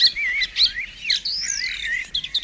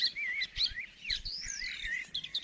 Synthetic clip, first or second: second